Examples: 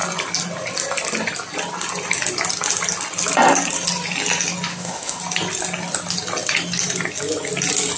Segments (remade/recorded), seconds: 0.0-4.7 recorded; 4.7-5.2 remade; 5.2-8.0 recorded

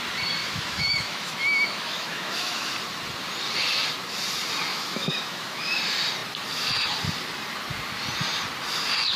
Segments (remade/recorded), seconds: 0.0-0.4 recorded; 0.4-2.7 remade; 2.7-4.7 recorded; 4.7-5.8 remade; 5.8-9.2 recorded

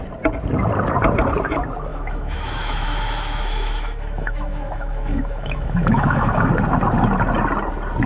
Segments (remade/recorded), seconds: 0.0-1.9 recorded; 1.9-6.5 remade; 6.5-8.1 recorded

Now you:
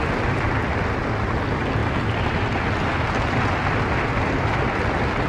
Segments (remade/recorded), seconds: 0.0-5.3 recorded

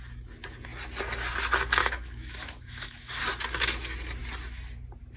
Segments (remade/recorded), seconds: 0.0-1.8 recorded; 1.8-3.2 remade; 3.2-5.2 recorded

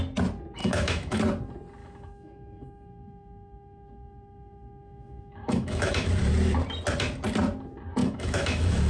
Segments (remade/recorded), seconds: 0.0-0.6 recorded; 0.6-1.2 remade; 1.2-1.8 recorded; 1.8-6.1 remade; 6.1-8.0 recorded; 8.0-8.9 remade

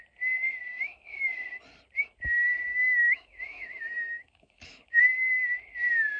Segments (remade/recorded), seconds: 0.0-0.7 recorded; 0.7-1.6 remade; 1.6-2.7 recorded; 2.7-5.0 remade; 5.0-6.2 recorded

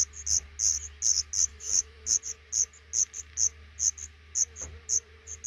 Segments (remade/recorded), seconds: 0.0-1.5 recorded; 1.5-2.2 remade; 2.2-5.5 recorded